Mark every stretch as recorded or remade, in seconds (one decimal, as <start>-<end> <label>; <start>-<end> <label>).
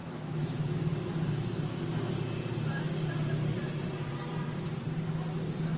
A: 0.0-1.1 remade; 1.1-5.8 recorded